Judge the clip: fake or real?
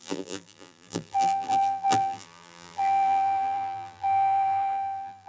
fake